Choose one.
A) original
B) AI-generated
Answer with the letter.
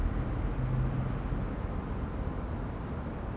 A